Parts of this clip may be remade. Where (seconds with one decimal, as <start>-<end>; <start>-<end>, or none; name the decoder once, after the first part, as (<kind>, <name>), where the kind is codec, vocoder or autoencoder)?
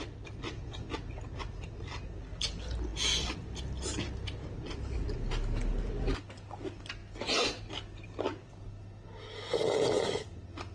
none